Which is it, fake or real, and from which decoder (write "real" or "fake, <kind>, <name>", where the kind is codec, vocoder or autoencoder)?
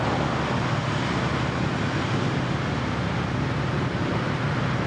real